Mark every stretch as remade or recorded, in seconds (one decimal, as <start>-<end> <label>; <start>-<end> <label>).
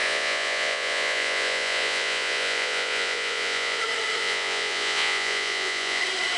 0.0-3.8 remade; 3.8-4.2 recorded; 4.2-6.0 remade; 6.0-6.4 recorded